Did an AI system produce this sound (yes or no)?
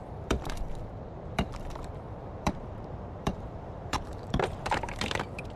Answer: yes